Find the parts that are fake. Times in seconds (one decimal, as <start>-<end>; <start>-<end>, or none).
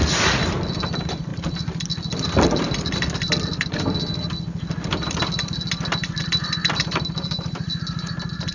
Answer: none